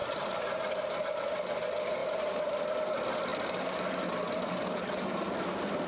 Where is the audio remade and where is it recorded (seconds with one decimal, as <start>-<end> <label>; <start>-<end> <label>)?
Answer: 0.0-1.0 remade; 1.0-2.0 recorded; 2.0-2.8 remade; 2.8-5.9 recorded

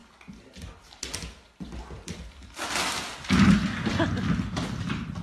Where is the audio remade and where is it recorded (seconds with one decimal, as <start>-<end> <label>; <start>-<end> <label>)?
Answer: 0.0-5.2 recorded

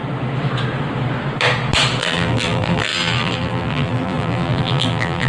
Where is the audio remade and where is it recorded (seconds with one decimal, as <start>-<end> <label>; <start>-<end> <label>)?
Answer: 0.0-2.0 recorded; 2.0-5.3 remade

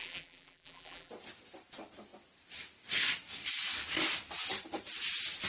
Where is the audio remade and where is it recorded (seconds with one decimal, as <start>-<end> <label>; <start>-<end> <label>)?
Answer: 0.0-1.1 remade; 1.1-5.5 recorded